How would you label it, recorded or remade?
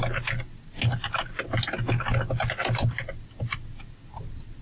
recorded